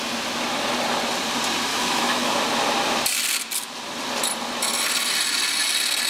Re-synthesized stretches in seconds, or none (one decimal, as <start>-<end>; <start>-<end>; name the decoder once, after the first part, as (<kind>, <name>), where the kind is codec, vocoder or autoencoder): 1.7-2.4 (autoencoder, DAC-VAE)